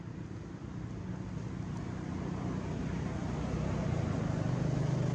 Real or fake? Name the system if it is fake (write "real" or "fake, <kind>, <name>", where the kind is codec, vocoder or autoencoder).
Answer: real